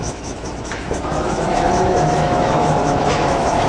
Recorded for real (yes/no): no